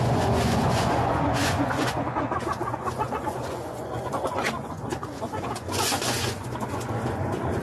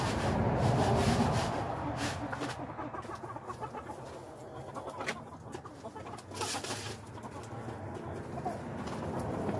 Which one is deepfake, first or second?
first